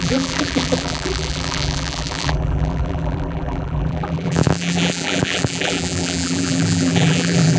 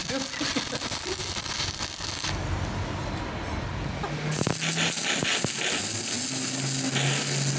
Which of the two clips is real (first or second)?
second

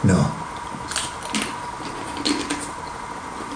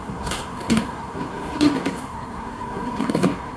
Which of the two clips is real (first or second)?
first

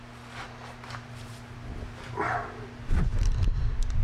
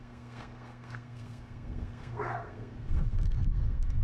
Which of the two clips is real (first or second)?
first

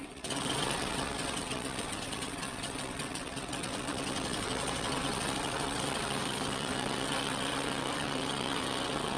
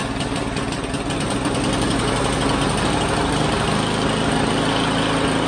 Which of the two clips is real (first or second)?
second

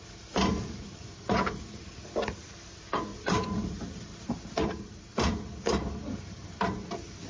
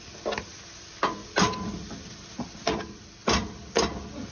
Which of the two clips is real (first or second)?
second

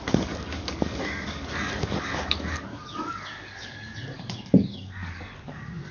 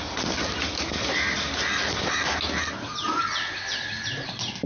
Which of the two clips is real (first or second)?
second